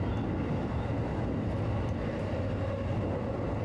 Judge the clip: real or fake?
real